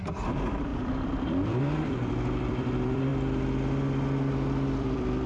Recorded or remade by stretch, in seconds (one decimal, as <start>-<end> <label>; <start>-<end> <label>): 0.0-3.1 remade; 3.1-4.8 recorded; 4.8-5.3 remade